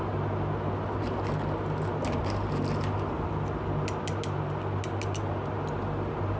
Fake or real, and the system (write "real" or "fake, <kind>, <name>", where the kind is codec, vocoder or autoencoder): real